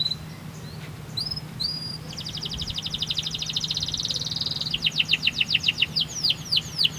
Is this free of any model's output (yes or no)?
yes